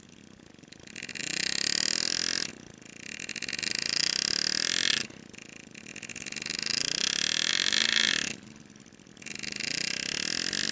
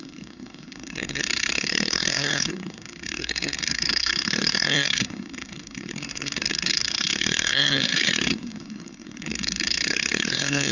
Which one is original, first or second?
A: first